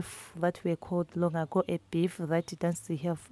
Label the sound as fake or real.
real